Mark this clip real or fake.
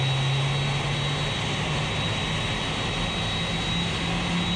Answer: real